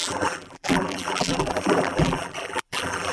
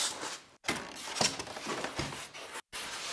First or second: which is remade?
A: first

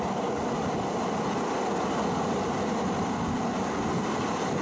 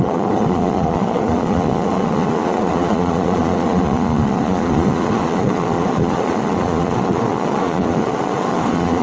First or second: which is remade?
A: second